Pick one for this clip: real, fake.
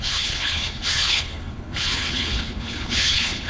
fake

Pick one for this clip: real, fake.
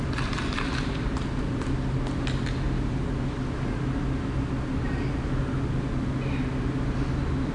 real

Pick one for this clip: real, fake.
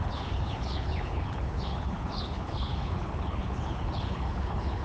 fake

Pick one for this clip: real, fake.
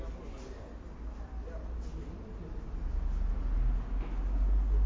real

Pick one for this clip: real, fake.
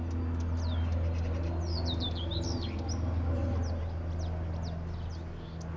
real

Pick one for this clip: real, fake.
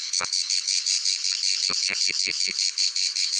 fake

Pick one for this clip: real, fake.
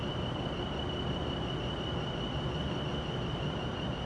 real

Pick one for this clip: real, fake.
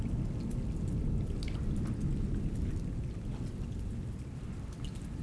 real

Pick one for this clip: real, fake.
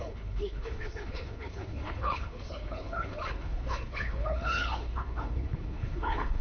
fake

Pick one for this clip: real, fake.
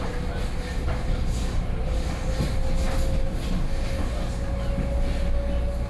real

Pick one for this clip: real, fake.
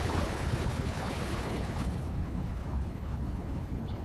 fake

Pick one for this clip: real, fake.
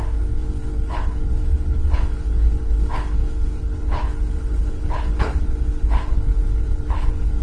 fake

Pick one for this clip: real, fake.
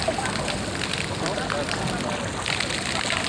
real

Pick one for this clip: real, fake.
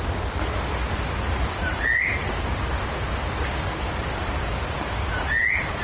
real